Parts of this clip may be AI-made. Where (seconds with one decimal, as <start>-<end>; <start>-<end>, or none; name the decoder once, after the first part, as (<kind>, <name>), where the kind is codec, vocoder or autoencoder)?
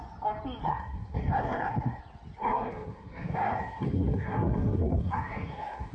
0.6-2.0 (codec, SNAC); 2.4-5.9